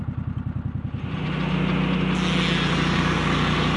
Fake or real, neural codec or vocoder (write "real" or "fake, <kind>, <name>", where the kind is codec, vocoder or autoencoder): real